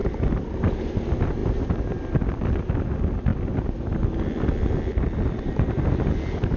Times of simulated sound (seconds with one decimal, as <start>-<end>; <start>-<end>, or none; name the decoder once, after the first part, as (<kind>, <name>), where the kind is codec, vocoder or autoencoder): 0.0-0.8 (vocoder, BigVGAN v2); 4.9-5.9

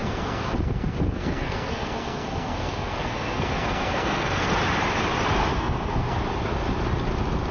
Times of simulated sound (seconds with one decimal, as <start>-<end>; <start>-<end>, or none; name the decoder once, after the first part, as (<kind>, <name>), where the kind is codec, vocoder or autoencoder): 0.0-4.5 (codec, SNAC); 5.5-6.2

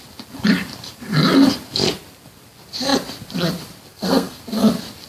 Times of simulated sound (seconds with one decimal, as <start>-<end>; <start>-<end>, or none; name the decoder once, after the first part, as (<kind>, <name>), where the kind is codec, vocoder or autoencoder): 3.9-4.4 (codec, SNAC)

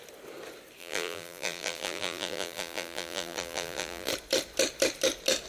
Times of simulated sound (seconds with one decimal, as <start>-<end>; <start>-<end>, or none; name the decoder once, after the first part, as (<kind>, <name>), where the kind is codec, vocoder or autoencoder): 0.8-4.1 (vocoder, BigVGAN v2)

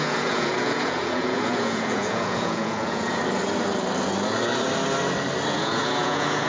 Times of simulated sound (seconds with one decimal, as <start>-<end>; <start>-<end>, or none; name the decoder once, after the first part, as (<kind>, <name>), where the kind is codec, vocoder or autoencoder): 0.0-3.2 (vocoder, Vocos); 5.5-6.5

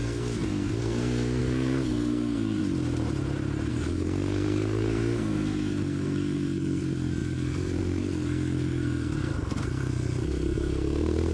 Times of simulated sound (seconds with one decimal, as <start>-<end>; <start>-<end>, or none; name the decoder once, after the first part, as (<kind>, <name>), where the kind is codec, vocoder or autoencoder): 0.0-2.6 (codec, SNAC); 3.7-11.3